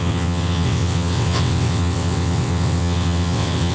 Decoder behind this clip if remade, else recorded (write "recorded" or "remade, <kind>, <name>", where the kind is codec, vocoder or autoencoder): remade, vocoder, WaveNeXt